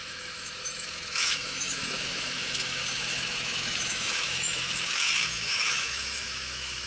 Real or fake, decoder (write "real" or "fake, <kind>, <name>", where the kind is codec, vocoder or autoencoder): fake, autoencoder, DAC-VAE